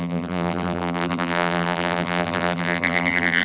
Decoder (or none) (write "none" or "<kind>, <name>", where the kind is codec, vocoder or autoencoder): vocoder, BigVGAN v2